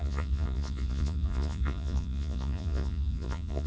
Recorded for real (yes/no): no